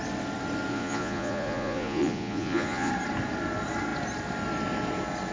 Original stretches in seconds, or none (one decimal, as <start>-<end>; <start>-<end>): 0.0-0.7; 2.9-5.3